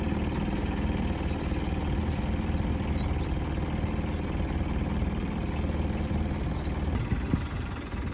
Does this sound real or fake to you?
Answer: real